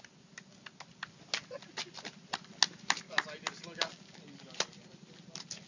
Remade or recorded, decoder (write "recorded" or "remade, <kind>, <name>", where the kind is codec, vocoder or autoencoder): recorded